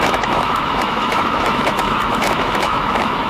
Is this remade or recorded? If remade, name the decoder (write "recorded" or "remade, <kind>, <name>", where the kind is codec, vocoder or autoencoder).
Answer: remade, autoencoder, DAC-VAE